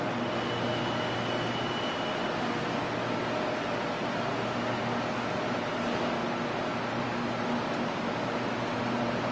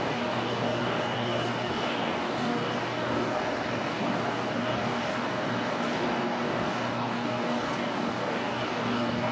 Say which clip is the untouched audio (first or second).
first